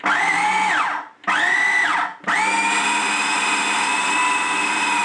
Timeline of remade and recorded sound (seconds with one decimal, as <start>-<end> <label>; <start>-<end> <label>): 0.0-5.0 recorded